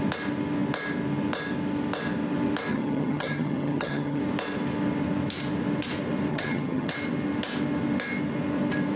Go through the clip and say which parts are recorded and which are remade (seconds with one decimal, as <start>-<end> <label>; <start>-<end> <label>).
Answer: 0.0-2.7 recorded; 2.7-4.2 remade; 4.2-6.3 recorded; 6.3-6.9 remade; 6.9-9.0 recorded